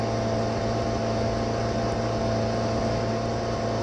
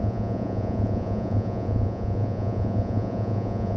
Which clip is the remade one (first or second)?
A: second